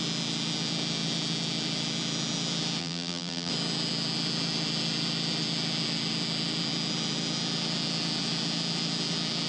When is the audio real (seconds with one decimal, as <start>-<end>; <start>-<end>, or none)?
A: 0.0-2.8; 3.5-9.5